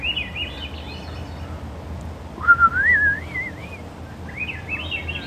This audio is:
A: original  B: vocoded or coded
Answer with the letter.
A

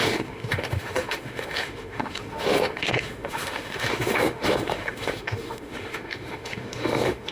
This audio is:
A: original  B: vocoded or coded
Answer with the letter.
B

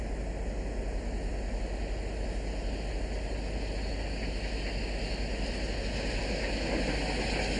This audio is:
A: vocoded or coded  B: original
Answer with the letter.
B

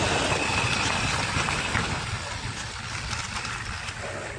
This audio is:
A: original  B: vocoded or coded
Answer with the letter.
A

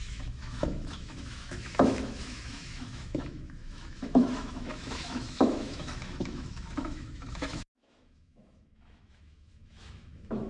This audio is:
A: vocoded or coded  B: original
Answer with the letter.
A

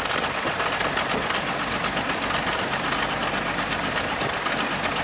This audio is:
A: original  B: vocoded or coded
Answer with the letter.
A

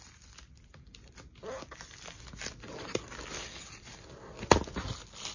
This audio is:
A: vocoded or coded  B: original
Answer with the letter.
B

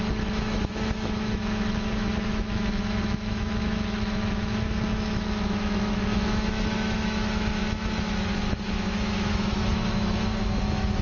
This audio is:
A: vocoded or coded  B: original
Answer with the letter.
A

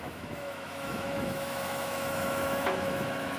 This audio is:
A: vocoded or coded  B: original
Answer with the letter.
A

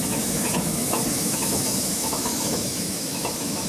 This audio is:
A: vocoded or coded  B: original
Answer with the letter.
A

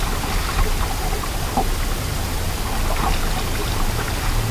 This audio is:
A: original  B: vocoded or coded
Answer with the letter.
A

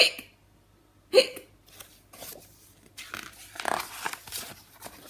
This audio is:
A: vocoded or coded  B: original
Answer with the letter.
B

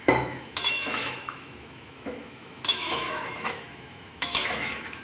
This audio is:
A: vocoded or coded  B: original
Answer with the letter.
A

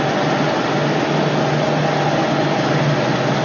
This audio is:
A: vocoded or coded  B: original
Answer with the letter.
B